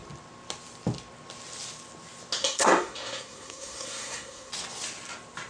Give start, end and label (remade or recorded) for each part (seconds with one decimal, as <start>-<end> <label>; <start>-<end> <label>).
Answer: 0.0-2.4 recorded; 2.4-4.5 remade; 4.5-5.5 recorded